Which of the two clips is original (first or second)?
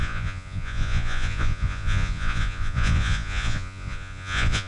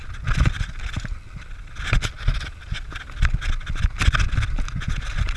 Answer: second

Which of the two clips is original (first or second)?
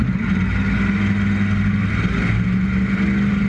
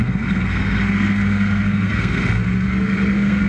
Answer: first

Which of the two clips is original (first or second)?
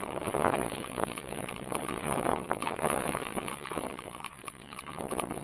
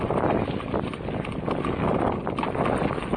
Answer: second